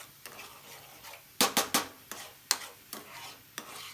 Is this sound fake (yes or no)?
no